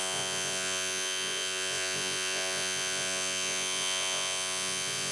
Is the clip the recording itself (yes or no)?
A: no